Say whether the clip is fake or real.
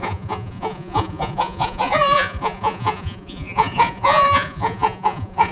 fake